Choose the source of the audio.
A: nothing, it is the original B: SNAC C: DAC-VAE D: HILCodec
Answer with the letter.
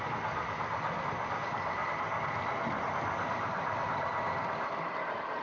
A